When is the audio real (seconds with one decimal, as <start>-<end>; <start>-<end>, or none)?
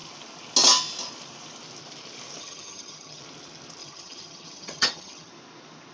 0.0-2.4; 3.2-3.8; 5.3-5.9